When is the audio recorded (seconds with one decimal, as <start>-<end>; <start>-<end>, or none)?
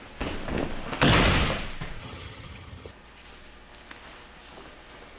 0.0-2.0; 2.9-5.2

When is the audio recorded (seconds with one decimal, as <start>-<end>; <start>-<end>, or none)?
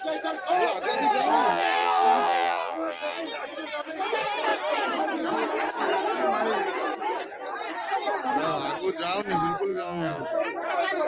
0.0-1.5; 3.2-9.7; 10.2-11.1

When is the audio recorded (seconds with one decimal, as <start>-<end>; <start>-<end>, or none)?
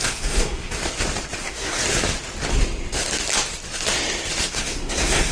0.8-1.4; 1.8-4.5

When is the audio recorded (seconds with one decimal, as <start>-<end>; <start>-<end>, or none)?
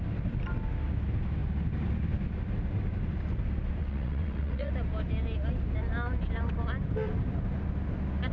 0.0-3.8; 4.7-8.3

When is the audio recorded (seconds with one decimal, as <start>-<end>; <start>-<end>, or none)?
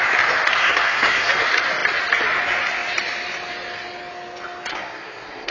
0.0-0.6; 1.3-4.7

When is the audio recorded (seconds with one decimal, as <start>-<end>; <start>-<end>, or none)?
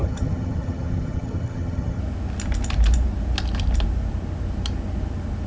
2.0-5.5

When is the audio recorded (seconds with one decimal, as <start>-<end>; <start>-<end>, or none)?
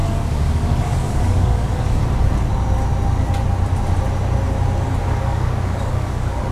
2.0-5.0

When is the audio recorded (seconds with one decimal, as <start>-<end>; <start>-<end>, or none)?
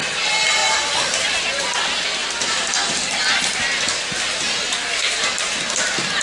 0.0-6.2